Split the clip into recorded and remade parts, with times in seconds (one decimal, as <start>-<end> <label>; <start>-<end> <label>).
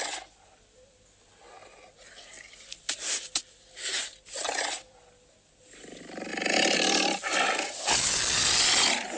0.0-9.2 recorded